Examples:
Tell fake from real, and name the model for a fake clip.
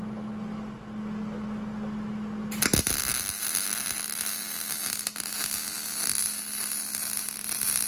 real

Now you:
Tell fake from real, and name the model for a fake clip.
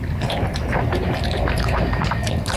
fake, vocoder, BigVGAN v2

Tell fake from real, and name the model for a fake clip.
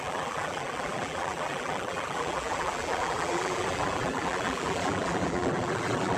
fake, vocoder, BigVGAN v2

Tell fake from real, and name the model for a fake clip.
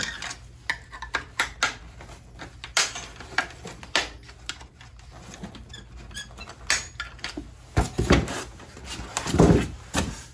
real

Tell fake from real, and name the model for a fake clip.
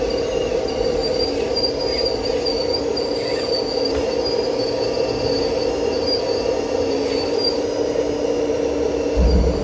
real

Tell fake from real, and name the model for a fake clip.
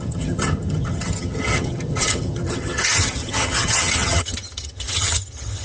fake, vocoder, HiFi-GAN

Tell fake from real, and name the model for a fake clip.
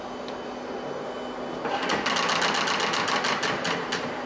real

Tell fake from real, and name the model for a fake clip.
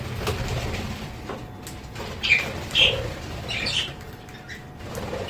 real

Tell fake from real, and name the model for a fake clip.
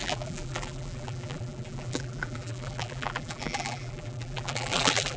fake, vocoder, BigVGAN v2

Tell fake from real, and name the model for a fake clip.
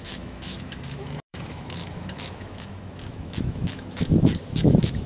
fake, autoencoder, DAC-VAE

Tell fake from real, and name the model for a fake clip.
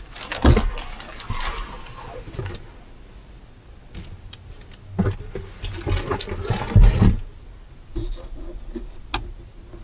real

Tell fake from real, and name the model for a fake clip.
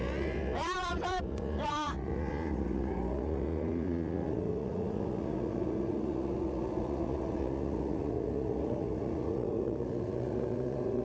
fake, vocoder, Vocos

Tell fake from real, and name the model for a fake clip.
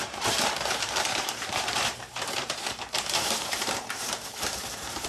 fake, vocoder, BigVGAN v2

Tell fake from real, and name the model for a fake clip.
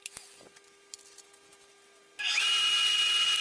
real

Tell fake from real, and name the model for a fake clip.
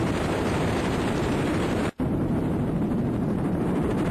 fake, vocoder, BigVGAN v2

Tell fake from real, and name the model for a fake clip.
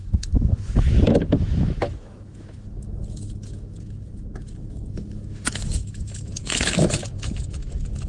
fake, autoencoder, DAC-VAE